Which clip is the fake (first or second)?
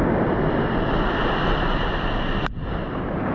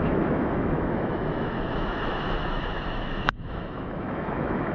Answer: second